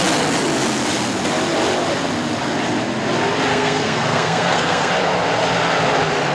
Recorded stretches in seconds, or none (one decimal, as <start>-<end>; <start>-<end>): 0.0-3.5; 4.9-6.3